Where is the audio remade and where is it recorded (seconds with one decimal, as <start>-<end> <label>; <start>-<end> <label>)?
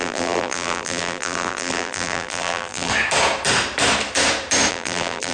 0.0-2.9 remade; 2.9-4.7 recorded; 4.7-5.3 remade